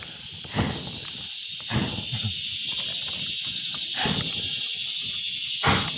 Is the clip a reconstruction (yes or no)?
no